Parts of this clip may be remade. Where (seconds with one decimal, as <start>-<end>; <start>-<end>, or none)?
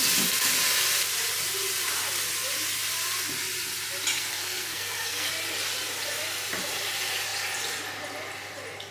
4.2-5.3